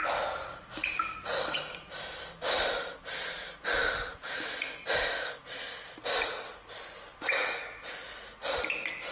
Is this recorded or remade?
recorded